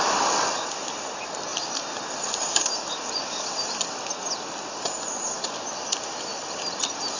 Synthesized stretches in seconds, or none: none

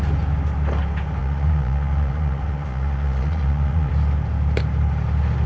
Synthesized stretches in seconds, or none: 1.2-3.9 (vocoder, Vocos)

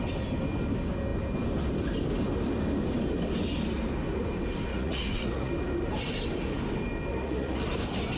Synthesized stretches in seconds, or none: 4.7-5.5 (vocoder, Vocos); 7.1-7.6

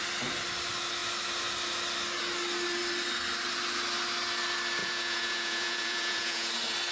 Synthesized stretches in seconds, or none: 4.8-6.5 (vocoder, Vocos)

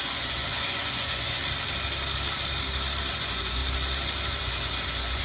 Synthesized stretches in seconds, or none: 0.0-1.4 (vocoder, Vocos); 3.1-3.6; 4.4-5.2